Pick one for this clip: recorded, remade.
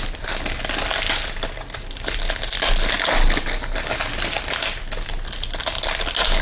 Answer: recorded